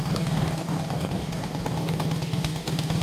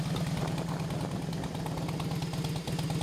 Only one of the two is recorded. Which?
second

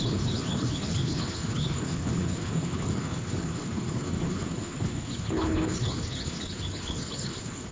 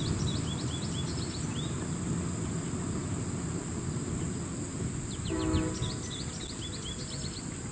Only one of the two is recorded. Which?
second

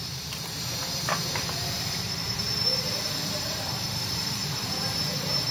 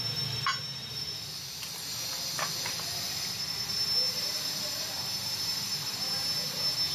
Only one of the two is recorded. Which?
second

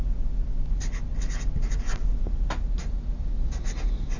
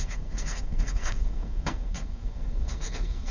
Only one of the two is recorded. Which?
first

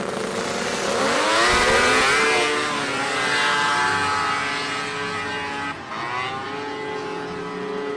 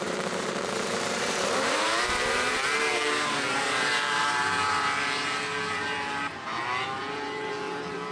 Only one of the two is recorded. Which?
first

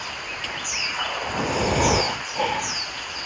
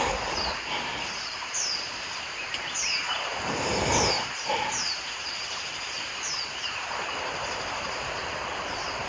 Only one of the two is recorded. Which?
first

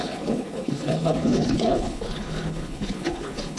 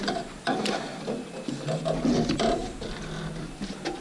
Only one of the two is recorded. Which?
second